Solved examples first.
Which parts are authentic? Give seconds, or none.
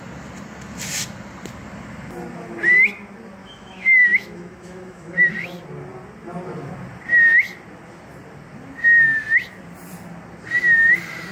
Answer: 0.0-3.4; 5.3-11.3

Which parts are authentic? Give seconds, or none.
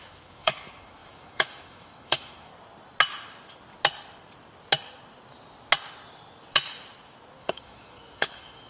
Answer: 2.5-7.4